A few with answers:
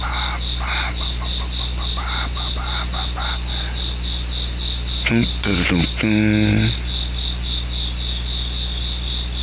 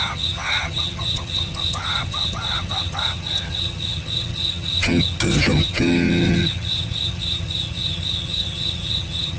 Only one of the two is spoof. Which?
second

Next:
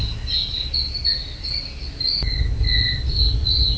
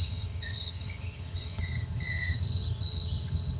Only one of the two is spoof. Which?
second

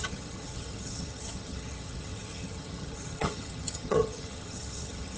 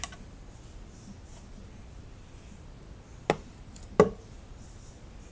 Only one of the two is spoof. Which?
first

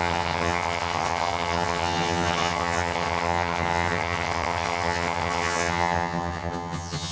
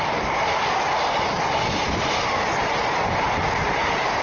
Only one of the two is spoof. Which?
first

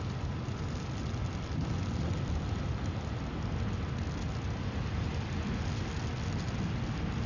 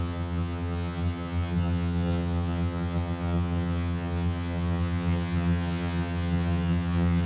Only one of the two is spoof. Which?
second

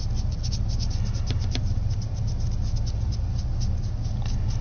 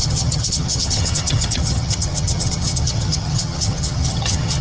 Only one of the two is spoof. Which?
second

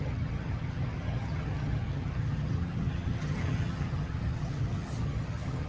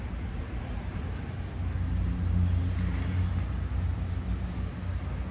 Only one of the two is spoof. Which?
first